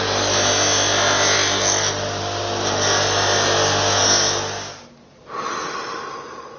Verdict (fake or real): real